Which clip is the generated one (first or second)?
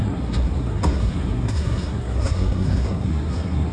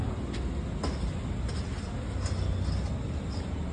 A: first